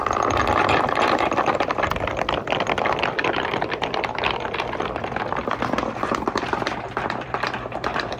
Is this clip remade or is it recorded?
remade